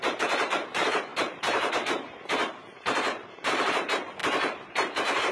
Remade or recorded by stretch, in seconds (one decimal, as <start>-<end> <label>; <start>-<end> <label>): 0.0-5.3 remade